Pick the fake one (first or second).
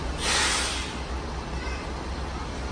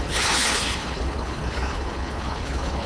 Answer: second